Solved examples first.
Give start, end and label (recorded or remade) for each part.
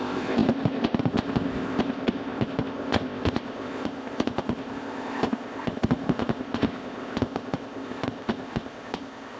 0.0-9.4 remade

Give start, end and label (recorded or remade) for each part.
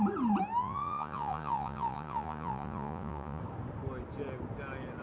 0.0-0.6 recorded; 0.6-3.4 remade; 3.4-5.0 recorded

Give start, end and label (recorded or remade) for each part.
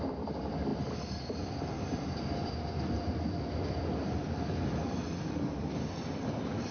0.0-6.7 recorded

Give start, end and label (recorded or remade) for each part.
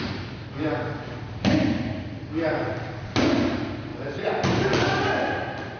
0.0-5.8 recorded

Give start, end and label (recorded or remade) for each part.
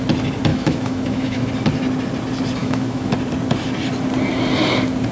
0.0-0.5 recorded; 0.5-1.5 remade; 1.5-2.6 recorded; 2.6-3.1 remade; 3.1-5.1 recorded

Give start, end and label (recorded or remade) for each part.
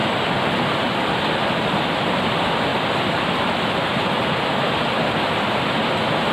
0.0-2.7 recorded; 2.7-4.3 remade; 4.3-6.3 recorded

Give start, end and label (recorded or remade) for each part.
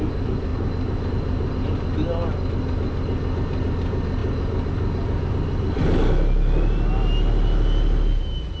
0.0-8.6 recorded